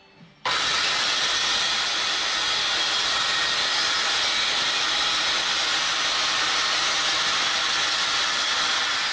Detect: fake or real real